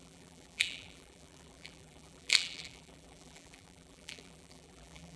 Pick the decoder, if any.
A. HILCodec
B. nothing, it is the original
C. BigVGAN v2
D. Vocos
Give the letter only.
C